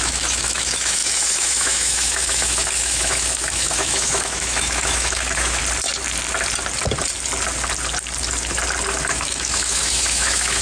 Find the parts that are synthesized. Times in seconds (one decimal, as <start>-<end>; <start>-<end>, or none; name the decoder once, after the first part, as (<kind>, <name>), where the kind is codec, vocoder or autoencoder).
0.0-5.6 (autoencoder, DAC-VAE); 9.1-10.6